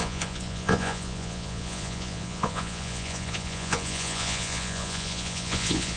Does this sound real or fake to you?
fake